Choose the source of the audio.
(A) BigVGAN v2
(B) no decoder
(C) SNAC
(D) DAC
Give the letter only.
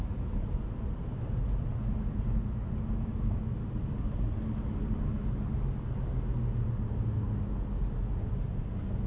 B